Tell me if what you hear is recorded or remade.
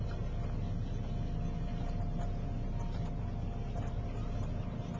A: recorded